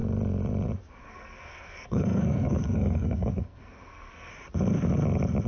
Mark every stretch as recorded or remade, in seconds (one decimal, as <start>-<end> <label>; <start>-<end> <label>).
0.0-1.0 recorded; 1.0-4.3 remade; 4.3-5.5 recorded